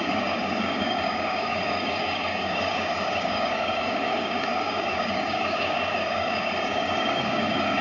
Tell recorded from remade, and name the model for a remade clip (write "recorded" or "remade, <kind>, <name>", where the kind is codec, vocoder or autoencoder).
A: remade, codec, DAC